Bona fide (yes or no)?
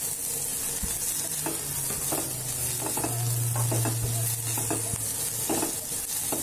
yes